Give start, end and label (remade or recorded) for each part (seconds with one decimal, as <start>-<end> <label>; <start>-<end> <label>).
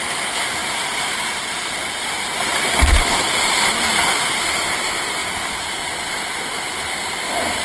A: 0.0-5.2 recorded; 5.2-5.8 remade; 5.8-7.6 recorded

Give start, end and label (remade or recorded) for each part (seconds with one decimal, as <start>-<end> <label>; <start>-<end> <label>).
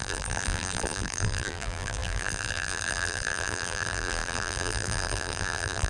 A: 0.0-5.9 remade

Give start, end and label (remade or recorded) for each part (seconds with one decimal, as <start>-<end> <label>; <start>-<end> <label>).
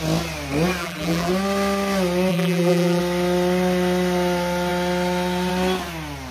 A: 0.0-0.8 recorded; 0.8-1.3 remade; 1.3-2.3 recorded; 2.3-3.0 remade; 3.0-6.3 recorded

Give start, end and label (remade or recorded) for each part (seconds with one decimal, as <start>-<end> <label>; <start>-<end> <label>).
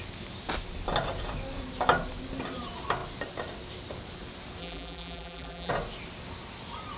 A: 0.0-4.6 recorded; 4.6-5.7 remade; 5.7-7.0 recorded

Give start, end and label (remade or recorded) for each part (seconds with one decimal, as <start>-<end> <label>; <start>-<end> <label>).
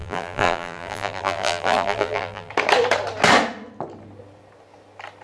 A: 0.0-2.5 remade; 2.5-5.2 recorded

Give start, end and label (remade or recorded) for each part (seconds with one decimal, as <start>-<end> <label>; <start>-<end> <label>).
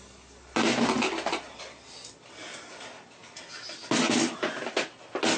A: 0.0-5.4 recorded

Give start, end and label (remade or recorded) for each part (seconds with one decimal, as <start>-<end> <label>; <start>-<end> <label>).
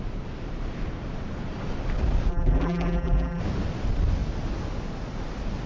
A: 0.0-2.3 recorded; 2.3-3.4 remade; 3.4-5.7 recorded